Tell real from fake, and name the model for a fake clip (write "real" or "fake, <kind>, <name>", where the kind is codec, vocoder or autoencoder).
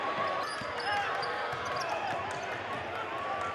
real